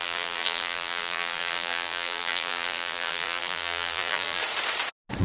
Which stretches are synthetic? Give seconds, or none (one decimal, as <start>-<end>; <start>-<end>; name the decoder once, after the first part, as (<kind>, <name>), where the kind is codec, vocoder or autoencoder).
0.0-4.4 (vocoder, BigVGAN v2)